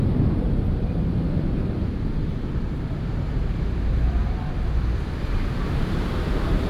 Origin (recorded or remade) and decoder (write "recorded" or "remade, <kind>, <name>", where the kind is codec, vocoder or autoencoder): remade, vocoder, BigVGAN v2